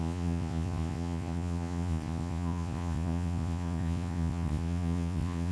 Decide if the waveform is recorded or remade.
remade